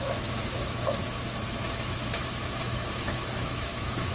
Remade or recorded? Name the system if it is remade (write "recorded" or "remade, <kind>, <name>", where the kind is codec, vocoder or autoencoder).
remade, autoencoder, DAC-VAE